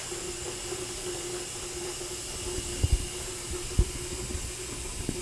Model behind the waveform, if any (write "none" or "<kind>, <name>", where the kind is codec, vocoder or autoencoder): none